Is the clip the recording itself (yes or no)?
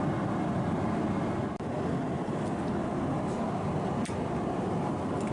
yes